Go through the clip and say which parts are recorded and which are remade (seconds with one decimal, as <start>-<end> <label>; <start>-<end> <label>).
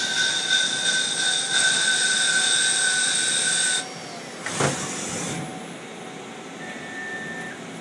0.0-7.8 recorded